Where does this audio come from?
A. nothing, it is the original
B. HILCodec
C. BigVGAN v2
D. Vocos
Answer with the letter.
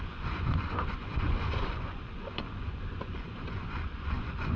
D